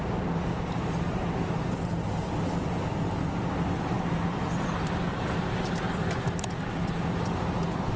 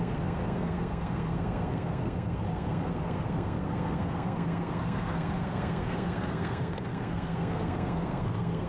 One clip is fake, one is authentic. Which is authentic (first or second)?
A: first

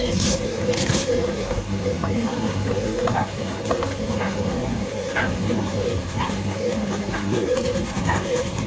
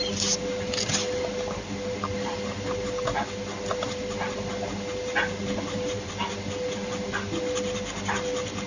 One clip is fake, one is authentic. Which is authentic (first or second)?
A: second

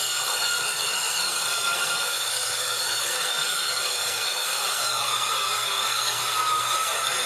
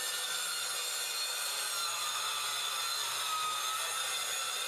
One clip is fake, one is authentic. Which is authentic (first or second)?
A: second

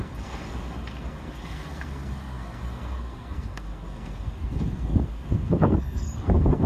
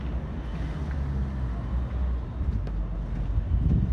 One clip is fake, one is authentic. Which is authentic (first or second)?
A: second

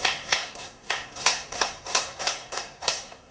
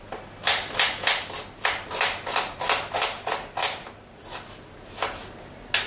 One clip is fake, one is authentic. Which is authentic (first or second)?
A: second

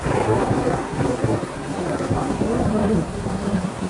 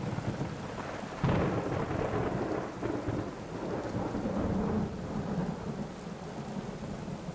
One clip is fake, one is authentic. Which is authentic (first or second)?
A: second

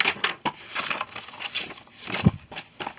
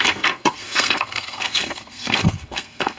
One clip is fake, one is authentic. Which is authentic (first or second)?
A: first